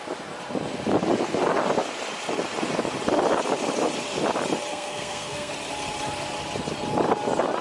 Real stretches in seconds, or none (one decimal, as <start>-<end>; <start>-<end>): 0.0-4.7; 5.5-7.6